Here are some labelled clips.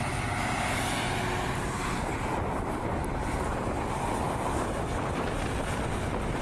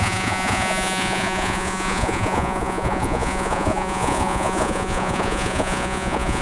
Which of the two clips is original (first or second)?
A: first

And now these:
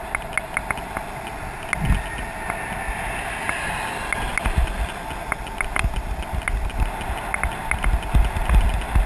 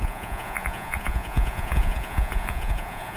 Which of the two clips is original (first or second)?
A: first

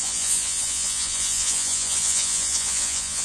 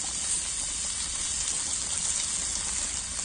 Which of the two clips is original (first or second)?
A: second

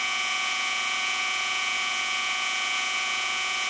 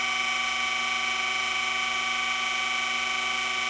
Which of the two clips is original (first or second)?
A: second